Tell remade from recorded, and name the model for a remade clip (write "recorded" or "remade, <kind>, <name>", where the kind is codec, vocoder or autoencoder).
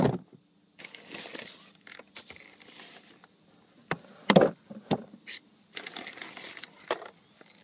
recorded